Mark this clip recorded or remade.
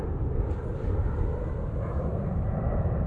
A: recorded